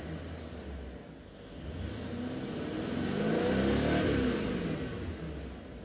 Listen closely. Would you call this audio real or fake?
real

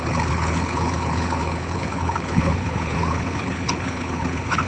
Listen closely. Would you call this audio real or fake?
fake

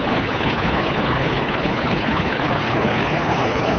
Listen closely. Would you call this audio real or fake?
fake